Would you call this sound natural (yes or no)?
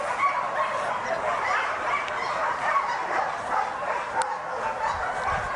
yes